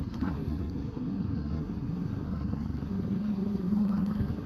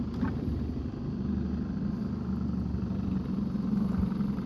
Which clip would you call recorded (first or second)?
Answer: second